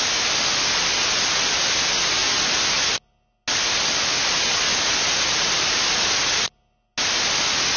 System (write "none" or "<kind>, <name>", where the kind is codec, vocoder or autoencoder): none